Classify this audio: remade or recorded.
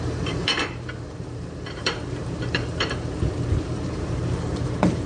remade